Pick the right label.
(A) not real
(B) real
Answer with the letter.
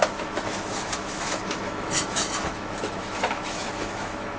A